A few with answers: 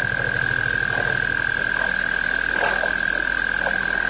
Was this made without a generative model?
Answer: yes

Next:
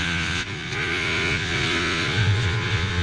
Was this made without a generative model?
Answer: no